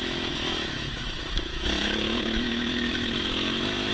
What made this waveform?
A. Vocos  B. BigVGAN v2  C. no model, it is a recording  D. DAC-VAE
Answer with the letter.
D